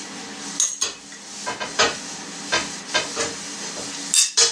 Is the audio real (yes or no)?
yes